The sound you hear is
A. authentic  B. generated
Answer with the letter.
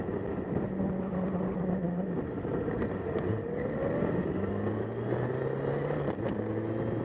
A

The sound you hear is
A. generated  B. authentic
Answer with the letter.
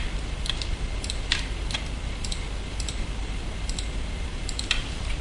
A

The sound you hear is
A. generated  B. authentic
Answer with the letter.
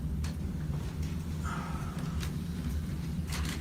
A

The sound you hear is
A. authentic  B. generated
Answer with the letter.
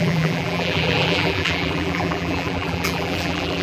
B